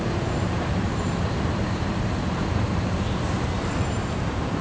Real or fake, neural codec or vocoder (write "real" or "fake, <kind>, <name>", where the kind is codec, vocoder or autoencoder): fake, vocoder, BigVGAN v2